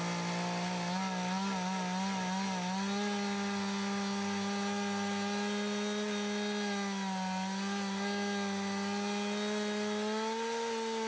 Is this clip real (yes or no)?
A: yes